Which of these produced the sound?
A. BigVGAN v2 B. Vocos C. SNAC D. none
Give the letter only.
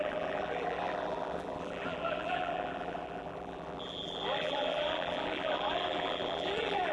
A